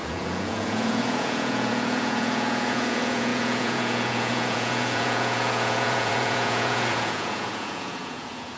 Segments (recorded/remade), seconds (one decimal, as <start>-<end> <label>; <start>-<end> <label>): 0.0-8.6 remade